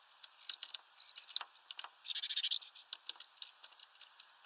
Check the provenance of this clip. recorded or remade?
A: recorded